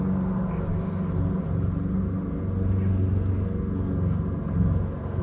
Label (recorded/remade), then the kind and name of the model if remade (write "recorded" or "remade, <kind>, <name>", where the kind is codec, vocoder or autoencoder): recorded